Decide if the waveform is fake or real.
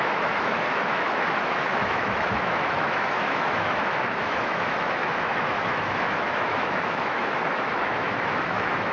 fake